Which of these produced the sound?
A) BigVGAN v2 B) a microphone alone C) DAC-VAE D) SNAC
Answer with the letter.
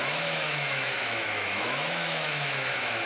C